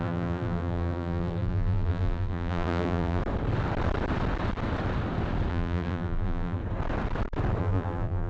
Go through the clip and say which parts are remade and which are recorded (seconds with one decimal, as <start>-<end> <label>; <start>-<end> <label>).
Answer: 0.0-3.2 remade; 3.2-5.5 recorded; 5.5-6.6 remade; 6.6-7.6 recorded; 7.6-8.3 remade